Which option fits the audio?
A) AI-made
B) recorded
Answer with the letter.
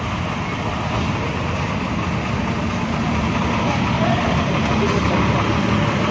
B